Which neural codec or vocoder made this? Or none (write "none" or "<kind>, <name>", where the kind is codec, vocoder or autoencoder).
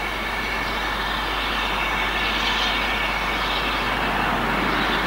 none